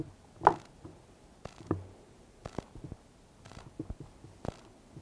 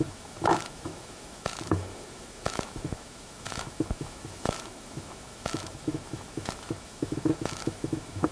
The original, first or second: first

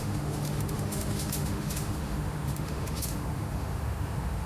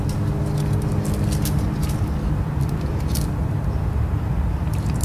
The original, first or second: second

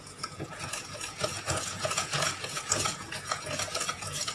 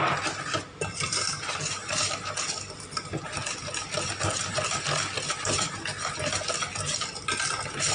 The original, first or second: second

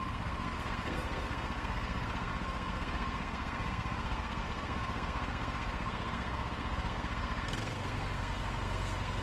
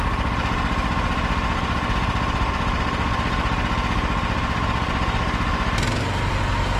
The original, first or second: second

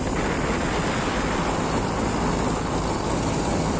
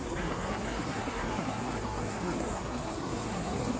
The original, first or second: first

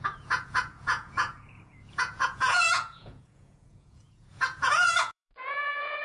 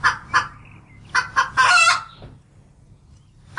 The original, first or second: second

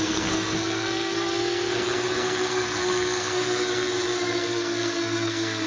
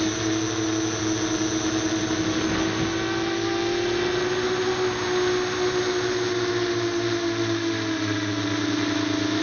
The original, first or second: second